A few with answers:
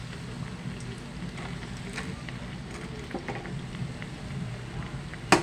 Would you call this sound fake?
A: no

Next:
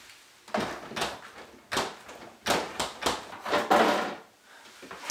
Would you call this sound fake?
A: no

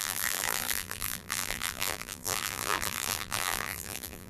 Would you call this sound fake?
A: yes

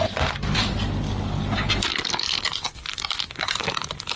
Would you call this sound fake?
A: no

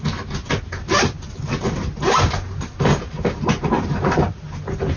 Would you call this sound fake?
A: no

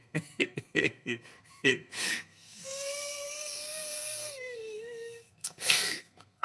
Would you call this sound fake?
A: yes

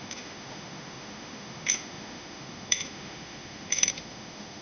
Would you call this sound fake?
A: yes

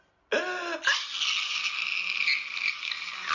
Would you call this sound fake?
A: no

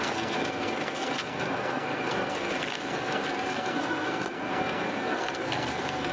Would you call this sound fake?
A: yes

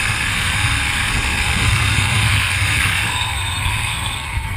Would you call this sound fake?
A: yes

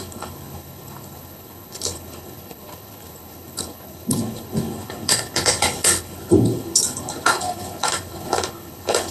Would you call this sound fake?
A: yes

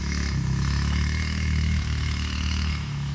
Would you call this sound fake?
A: yes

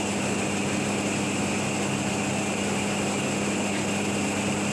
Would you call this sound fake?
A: no